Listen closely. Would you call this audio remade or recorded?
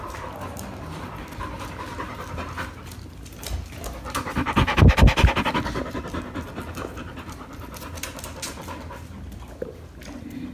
recorded